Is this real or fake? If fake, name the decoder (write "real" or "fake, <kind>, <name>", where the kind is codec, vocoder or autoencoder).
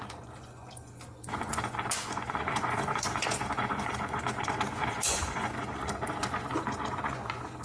fake, vocoder, Vocos